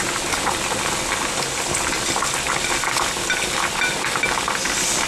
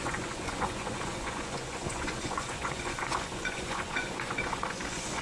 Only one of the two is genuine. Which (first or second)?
first